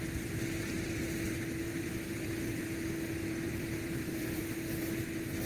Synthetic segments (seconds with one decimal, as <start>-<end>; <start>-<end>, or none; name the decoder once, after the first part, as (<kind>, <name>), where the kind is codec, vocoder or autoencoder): 1.6-2.6 (vocoder, BigVGAN v2); 3.2-4.4